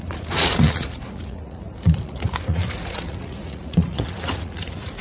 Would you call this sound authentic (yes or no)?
no